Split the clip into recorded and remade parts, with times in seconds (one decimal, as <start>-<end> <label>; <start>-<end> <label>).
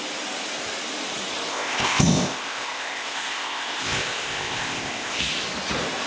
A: 0.0-1.5 recorded; 1.5-5.2 remade; 5.2-6.1 recorded